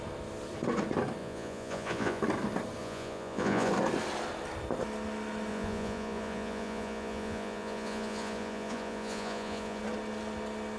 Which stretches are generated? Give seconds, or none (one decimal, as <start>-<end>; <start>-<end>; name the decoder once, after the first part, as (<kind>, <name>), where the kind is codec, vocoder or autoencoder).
1.2-2.2 (vocoder, Vocos); 2.8-3.7; 5.5-9.8